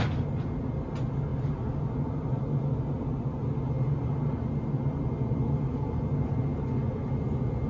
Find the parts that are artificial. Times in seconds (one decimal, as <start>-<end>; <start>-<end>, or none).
none